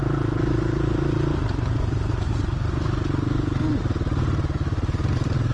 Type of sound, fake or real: real